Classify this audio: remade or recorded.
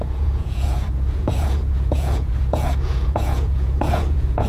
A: remade